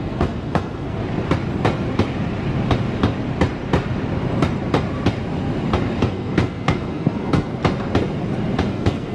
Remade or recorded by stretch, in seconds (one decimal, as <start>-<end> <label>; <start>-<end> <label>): 0.0-1.0 remade; 1.0-6.0 recorded; 6.0-7.6 remade; 7.6-8.7 recorded; 8.7-9.1 remade